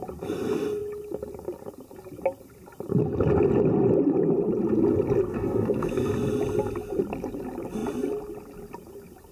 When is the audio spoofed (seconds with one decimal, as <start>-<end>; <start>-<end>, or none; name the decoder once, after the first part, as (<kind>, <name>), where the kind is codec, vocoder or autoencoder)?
5.3-6.1 (codec, SNAC)